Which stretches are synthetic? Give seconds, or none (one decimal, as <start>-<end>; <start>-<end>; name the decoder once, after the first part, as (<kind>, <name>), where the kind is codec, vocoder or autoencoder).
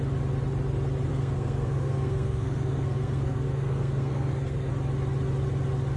1.1-4.7 (codec, SNAC)